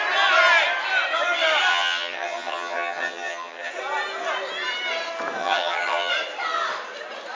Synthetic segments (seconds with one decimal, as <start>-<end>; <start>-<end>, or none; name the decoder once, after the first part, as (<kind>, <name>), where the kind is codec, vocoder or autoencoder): 1.7-3.7 (vocoder, HiFi-GAN); 5.4-6.1